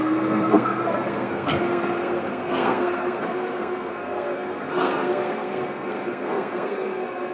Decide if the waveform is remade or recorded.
remade